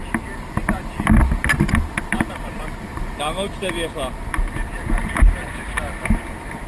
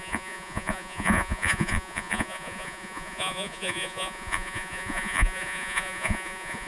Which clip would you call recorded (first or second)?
first